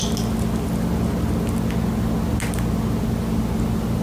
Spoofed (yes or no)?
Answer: no